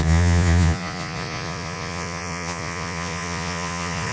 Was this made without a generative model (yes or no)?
no